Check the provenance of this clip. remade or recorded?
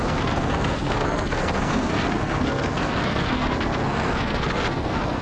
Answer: remade